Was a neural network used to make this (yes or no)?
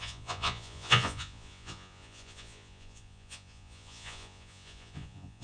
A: yes